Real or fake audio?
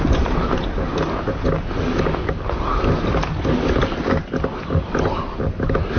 real